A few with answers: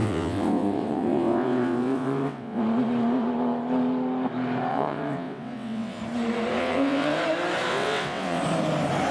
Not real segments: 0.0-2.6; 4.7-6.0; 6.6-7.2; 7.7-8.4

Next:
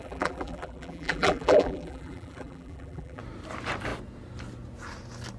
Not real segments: 0.0-3.2

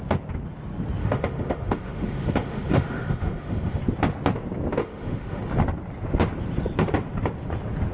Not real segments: 1.0-3.8; 4.8-5.4

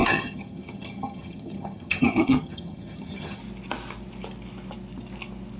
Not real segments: 0.0-3.4

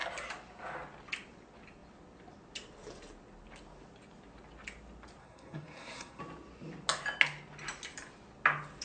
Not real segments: 5.2-6.2

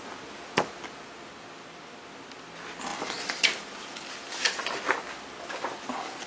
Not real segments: none